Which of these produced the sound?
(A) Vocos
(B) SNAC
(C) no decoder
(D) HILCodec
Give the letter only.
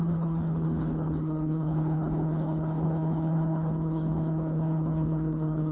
D